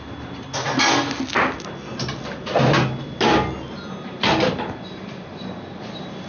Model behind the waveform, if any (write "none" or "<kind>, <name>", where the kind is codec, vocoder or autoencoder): none